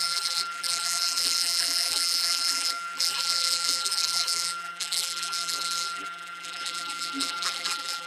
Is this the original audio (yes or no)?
no